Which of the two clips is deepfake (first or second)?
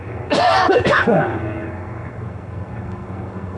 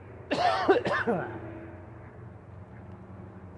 first